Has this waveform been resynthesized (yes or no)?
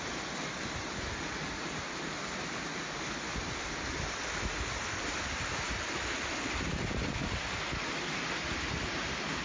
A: no